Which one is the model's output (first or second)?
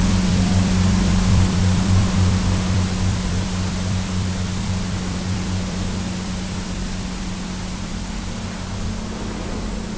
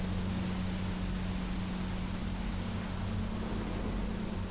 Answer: first